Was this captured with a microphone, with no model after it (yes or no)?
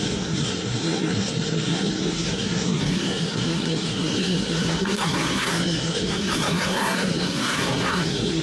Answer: no